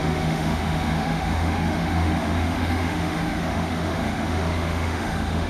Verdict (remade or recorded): remade